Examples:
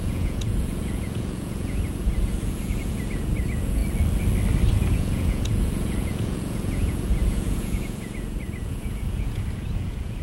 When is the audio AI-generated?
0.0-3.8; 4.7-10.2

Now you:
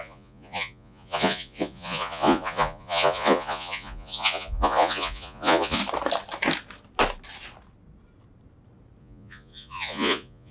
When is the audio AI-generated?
0.0-5.8; 9.0-10.5

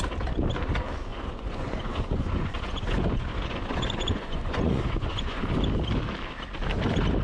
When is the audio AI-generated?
1.1-5.4

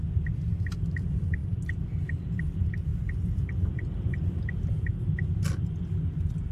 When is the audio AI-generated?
none

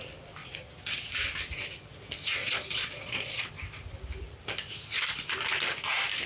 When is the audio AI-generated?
0.4-1.0; 2.4-3.5